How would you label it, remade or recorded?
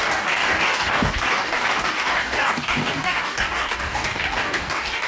remade